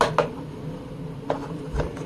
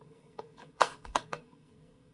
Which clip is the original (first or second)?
first